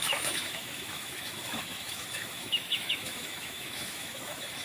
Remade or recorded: remade